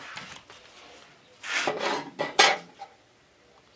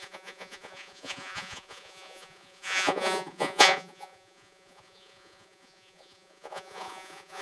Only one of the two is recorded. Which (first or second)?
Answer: first